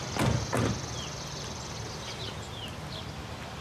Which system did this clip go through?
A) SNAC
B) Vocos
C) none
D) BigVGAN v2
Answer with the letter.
C